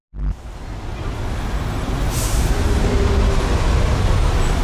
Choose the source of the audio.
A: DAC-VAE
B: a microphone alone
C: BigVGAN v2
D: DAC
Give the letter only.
B